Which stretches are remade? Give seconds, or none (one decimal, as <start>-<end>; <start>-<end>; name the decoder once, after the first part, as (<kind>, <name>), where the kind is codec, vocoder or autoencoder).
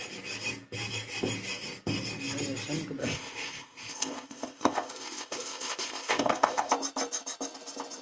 3.0-6.7 (codec, ZipCodec)